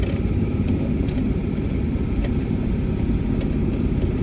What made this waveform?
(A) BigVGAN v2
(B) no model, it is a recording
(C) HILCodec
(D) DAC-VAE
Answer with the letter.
A